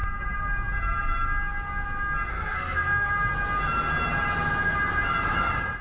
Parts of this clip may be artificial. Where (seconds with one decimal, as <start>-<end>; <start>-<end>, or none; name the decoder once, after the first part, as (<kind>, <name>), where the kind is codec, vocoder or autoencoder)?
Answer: 2.3-3.1 (codec, SNAC)